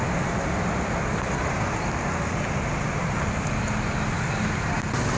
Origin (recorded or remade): recorded